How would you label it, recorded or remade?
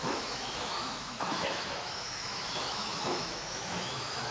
remade